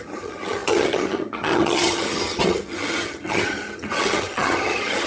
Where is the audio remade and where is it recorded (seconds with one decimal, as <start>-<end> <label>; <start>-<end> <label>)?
0.0-5.1 remade